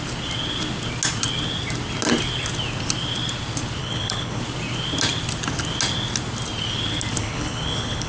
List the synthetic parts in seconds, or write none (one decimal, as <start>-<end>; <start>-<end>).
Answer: 3.8-4.4; 7.2-8.1